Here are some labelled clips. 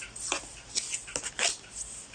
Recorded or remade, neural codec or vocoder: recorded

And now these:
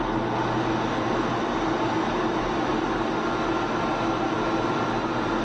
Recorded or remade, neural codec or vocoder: recorded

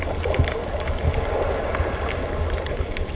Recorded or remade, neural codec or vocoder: recorded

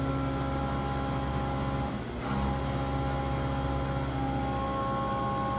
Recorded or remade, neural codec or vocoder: recorded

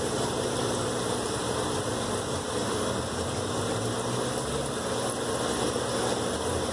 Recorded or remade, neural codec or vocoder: recorded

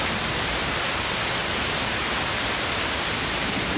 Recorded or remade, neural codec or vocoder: recorded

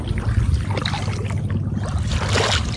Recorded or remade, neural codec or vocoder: recorded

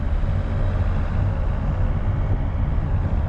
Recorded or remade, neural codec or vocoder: recorded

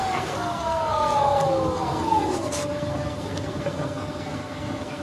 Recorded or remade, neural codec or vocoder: remade, codec, SNAC